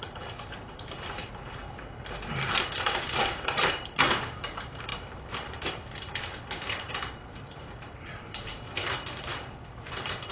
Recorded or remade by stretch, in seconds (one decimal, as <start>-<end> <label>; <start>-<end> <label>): 0.0-1.6 remade; 1.6-2.6 recorded; 2.6-10.3 remade